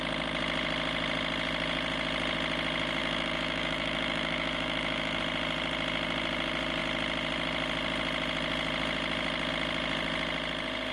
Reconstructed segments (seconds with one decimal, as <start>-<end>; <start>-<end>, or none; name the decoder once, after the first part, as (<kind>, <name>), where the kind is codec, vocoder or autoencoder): 3.0-5.2 (autoencoder, DAC-VAE)